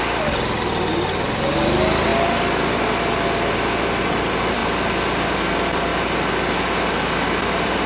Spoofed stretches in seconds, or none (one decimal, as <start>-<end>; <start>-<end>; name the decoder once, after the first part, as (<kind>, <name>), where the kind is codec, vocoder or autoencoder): 0.0-2.1 (vocoder, BigVGAN v2); 4.0-4.6; 5.3-5.9; 7.4-7.9